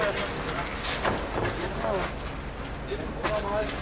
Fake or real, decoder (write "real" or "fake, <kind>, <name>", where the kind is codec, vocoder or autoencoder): real